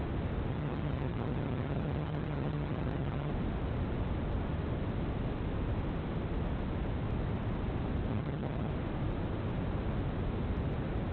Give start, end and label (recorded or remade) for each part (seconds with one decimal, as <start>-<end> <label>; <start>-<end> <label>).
0.0-0.5 recorded; 0.5-3.3 remade; 3.3-8.1 recorded; 8.1-8.7 remade; 8.7-11.1 recorded